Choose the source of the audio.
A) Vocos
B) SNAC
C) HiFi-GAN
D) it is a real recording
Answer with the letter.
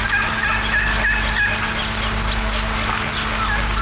D